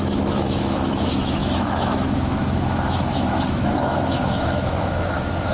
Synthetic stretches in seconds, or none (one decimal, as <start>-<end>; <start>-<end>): 0.0-5.5